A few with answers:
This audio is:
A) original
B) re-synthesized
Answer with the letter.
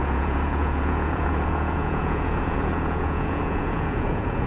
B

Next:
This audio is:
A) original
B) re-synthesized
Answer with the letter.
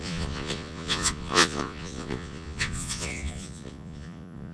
B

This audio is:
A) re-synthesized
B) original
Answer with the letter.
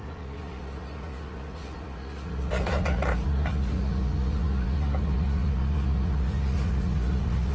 A